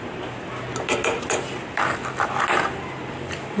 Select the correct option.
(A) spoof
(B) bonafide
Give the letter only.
B